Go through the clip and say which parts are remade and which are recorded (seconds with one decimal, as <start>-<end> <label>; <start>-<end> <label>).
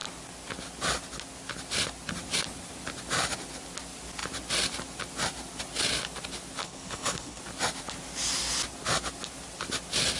0.0-6.6 recorded; 6.6-7.4 remade; 7.4-10.2 recorded